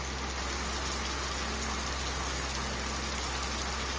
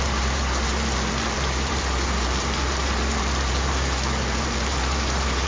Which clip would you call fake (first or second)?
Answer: second